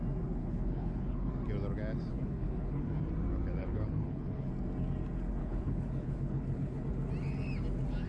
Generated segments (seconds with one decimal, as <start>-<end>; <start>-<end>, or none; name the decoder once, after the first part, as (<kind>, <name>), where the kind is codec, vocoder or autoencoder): 0.4-1.3 (codec, HILCodec); 2.1-3.0; 3.6-4.5; 5.4-6.8

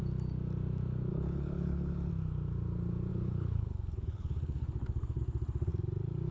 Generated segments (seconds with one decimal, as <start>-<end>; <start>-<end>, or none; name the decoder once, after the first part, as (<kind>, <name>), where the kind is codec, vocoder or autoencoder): 1.1-2.1 (codec, HILCodec); 3.1-5.2

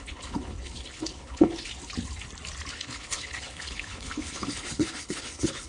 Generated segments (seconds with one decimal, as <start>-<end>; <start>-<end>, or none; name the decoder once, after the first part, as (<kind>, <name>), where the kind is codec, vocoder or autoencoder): 0.0-1.7 (codec, HILCodec); 2.7-5.7

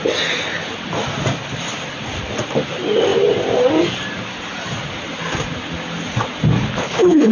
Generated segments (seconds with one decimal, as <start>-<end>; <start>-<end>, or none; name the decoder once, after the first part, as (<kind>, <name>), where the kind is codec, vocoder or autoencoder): 6.6-7.3 (codec, HILCodec)

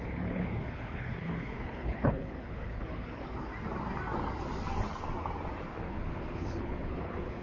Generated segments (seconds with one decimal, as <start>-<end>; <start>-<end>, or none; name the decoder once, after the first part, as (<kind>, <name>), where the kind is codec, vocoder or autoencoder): 0.0-3.5 (codec, HILCodec); 5.8-7.4